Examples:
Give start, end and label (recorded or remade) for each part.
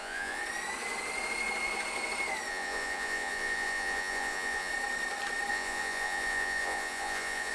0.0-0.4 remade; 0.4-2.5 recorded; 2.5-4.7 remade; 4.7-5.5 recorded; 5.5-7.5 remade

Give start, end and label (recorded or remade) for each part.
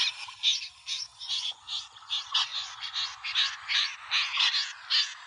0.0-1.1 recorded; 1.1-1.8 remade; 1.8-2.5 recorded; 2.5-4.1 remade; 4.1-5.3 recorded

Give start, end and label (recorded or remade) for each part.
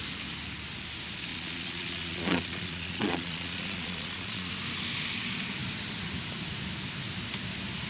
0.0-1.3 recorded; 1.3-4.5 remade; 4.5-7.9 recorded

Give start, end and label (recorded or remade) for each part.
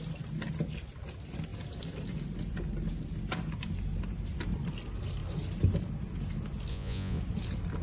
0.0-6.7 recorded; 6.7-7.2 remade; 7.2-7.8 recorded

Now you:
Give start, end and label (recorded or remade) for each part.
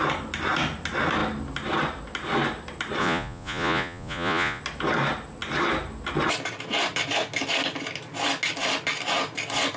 0.0-3.0 recorded; 3.0-4.6 remade; 4.6-9.8 recorded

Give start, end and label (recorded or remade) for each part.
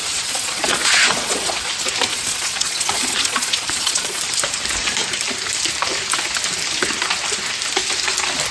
0.0-1.7 remade; 1.7-2.1 recorded; 2.1-4.2 remade; 4.2-8.5 recorded